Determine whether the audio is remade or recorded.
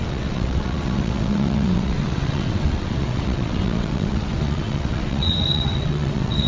remade